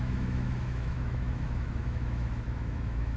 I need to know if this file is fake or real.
fake